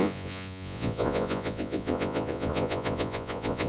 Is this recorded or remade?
remade